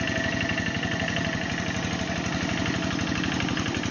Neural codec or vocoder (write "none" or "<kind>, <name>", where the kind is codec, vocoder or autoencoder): none